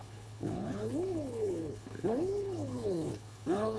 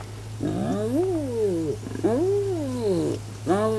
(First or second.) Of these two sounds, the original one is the second